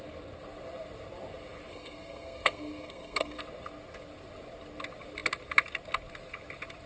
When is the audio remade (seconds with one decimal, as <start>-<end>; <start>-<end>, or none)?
1.7-3.4

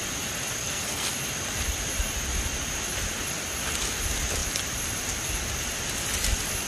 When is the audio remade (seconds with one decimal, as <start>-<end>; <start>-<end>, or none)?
0.6-1.1

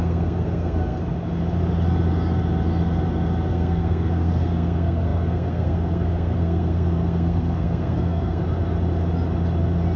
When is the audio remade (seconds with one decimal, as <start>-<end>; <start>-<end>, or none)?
0.0-1.0; 3.5-8.4

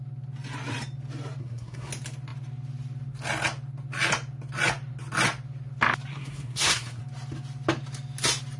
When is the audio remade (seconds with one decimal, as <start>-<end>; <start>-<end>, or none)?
1.4-1.9; 6.1-7.0